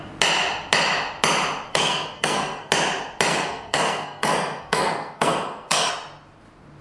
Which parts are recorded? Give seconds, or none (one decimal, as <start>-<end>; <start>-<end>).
0.0-1.7; 2.7-3.3; 5.9-6.8